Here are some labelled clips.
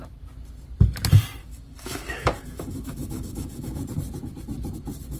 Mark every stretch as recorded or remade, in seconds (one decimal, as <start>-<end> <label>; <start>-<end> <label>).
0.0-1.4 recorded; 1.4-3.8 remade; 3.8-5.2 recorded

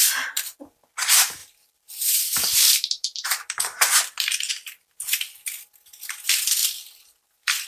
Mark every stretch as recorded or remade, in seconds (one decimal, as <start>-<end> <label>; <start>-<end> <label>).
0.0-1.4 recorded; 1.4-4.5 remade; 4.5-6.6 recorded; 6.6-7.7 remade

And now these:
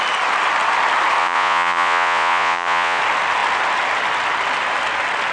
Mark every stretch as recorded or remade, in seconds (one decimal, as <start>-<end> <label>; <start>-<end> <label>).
0.0-1.2 recorded; 1.2-3.0 remade; 3.0-5.3 recorded

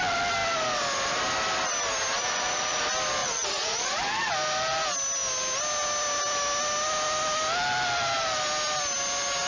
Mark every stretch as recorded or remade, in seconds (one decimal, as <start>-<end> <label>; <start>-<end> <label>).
0.0-2.2 recorded; 2.2-2.8 remade; 2.8-3.2 recorded; 3.2-4.3 remade; 4.3-9.5 recorded

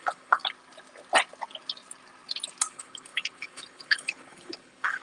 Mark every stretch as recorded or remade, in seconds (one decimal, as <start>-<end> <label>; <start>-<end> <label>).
0.0-0.4 remade; 0.4-2.7 recorded; 2.7-5.0 remade

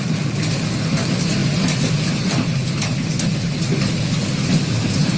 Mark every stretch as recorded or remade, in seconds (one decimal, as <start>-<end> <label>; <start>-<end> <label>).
0.0-5.2 recorded